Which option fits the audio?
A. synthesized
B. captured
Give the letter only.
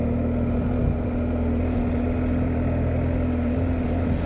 B